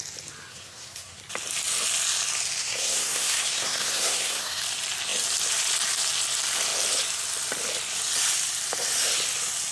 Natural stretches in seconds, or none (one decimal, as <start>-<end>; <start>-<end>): 0.0-0.5; 1.2-2.6; 4.6-9.7